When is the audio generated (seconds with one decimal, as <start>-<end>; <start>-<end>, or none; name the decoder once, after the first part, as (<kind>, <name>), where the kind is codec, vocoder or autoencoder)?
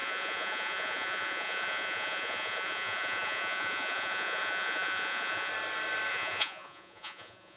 0.0-5.5 (vocoder, Vocos); 6.1-7.6